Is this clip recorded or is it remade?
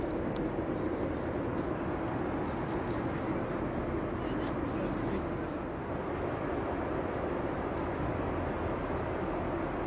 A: recorded